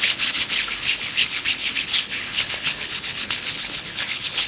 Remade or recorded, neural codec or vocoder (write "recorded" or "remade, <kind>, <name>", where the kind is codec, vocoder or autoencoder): remade, codec, HILCodec